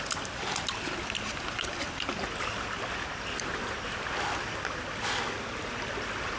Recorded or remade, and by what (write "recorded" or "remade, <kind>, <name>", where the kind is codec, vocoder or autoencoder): recorded